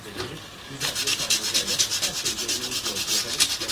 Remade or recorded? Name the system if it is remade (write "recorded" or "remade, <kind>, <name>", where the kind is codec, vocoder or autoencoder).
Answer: recorded